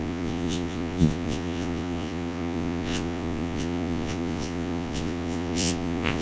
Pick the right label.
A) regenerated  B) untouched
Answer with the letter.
A